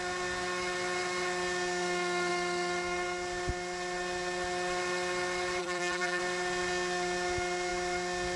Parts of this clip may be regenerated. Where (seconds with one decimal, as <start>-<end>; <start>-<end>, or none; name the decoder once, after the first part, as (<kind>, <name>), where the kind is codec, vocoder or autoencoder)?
5.6-6.2 (vocoder, BigVGAN v2)